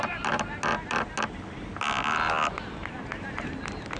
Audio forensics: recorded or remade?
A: recorded